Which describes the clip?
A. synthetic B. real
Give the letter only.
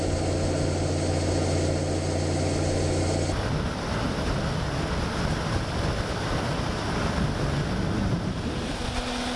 B